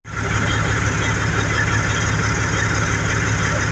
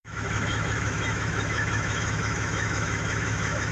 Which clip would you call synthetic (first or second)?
second